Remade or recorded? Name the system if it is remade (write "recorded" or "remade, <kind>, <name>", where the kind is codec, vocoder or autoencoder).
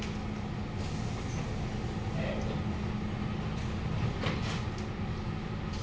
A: recorded